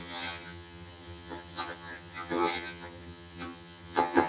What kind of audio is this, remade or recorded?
remade